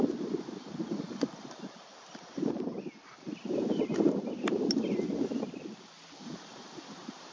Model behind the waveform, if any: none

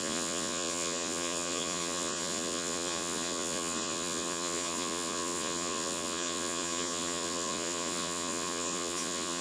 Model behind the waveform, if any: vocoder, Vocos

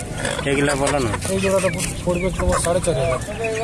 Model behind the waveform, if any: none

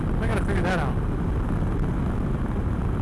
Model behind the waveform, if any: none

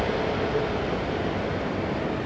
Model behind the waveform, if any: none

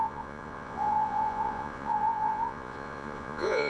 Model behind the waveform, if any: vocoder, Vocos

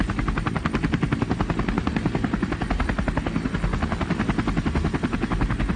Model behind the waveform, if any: none